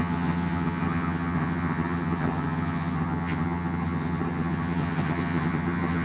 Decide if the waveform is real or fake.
fake